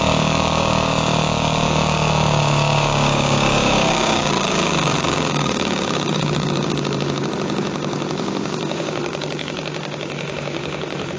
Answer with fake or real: fake